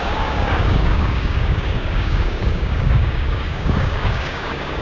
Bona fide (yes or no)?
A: no